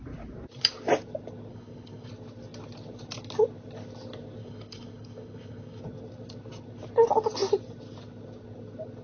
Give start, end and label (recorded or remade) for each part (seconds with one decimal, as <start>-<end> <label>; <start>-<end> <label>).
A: 0.0-1.5 recorded; 1.5-2.1 remade; 2.1-4.4 recorded; 4.4-5.8 remade; 5.8-9.0 recorded